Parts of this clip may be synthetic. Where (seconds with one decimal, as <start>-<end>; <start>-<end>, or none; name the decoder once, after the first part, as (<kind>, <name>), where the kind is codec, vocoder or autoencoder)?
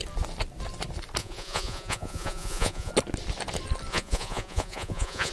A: 1.2-2.9 (vocoder, Vocos); 3.9-5.3